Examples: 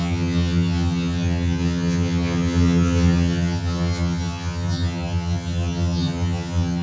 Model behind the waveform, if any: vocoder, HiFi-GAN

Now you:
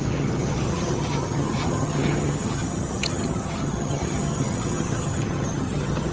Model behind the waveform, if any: vocoder, HiFi-GAN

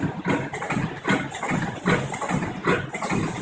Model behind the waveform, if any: none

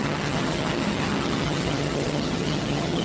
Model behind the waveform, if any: vocoder, HiFi-GAN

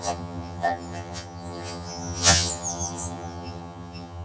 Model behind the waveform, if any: vocoder, HiFi-GAN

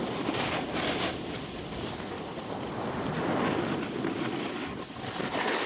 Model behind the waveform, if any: none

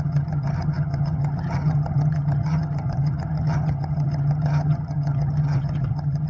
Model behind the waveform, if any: vocoder, HiFi-GAN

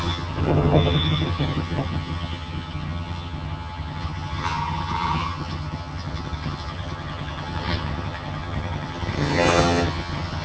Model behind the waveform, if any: vocoder, HiFi-GAN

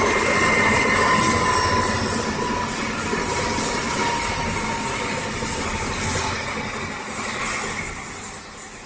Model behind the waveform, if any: none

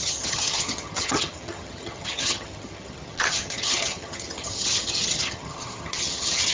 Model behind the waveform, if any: vocoder, HiFi-GAN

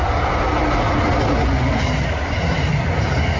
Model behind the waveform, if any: none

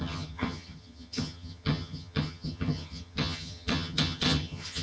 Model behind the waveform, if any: vocoder, HiFi-GAN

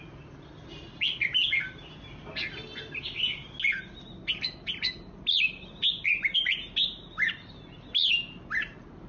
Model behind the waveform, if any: none